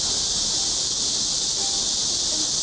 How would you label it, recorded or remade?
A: recorded